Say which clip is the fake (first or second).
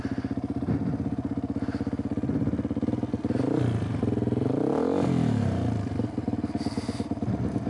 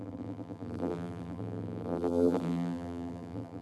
second